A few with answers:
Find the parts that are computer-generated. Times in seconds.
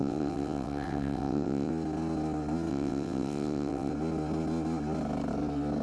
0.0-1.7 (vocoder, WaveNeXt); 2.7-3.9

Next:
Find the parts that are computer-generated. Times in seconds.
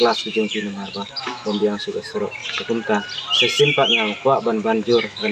0.0-2.4 (autoencoder, DAC-VAE); 3.6-5.3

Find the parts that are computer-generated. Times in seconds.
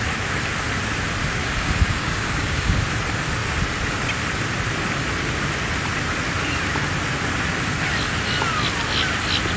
1.4-2.8 (codec, DAC)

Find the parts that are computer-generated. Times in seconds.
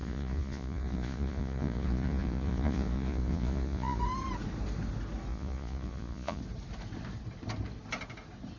0.0-4.0 (vocoder, Vocos); 5.3-6.4